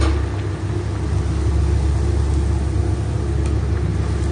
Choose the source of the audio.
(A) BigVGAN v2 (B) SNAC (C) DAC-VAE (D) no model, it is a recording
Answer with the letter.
D